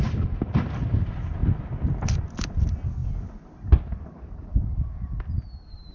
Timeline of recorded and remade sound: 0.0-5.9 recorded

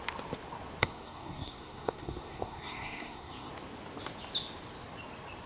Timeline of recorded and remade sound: 0.0-0.8 recorded; 0.8-3.5 remade; 3.5-5.5 recorded

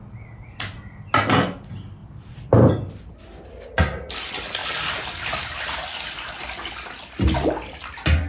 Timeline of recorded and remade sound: 0.0-2.0 recorded; 2.0-3.1 remade; 3.1-8.3 recorded